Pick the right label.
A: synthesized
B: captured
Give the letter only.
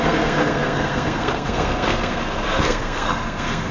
A